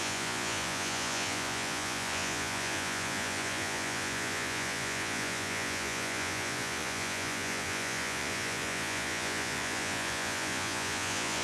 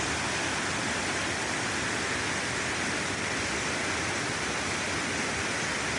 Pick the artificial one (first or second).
first